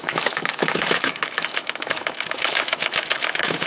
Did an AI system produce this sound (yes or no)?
yes